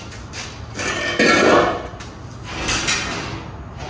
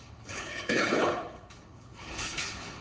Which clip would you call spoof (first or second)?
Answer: second